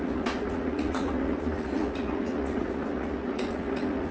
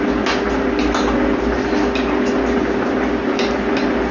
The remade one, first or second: first